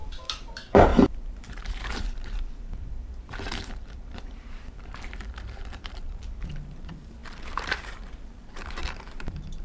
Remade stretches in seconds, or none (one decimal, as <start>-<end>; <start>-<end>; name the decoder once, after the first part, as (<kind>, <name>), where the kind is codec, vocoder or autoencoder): 0.0-9.6 (vocoder, BigVGAN v2)